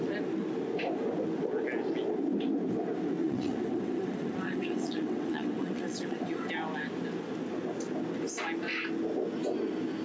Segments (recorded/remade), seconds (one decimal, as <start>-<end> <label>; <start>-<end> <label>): 0.0-3.2 recorded; 3.2-6.5 remade; 6.5-10.0 recorded